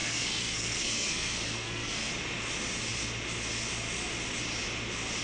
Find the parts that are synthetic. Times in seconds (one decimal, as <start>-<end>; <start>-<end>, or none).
0.0-2.1

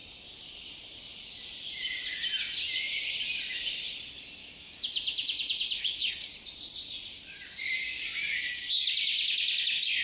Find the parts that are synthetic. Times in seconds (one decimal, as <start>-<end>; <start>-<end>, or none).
4.4-6.1

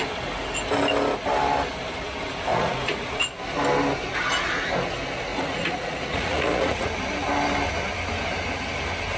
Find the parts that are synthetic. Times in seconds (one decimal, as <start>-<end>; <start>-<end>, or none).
2.5-3.2; 5.3-6.9

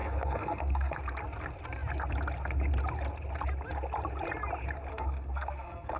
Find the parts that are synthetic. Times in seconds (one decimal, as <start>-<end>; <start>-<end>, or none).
0.0-1.0; 4.9-6.0

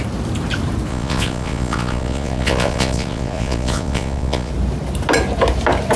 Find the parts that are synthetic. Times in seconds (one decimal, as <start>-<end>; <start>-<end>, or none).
0.9-4.5

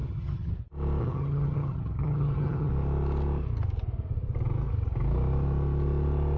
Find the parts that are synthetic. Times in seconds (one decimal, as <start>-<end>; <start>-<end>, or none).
0.0-0.5; 1.0-2.7

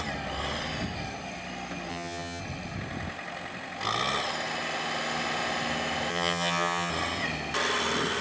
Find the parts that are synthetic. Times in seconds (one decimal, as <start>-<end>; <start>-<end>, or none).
1.9-2.4; 6.1-6.9

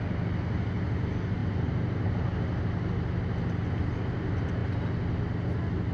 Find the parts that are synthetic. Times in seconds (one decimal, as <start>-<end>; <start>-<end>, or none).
none